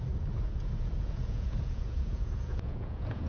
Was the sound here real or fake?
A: fake